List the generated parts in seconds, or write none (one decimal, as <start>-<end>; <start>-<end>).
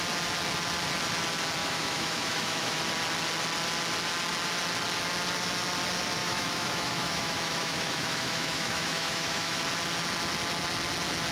1.6-2.8; 6.2-9.6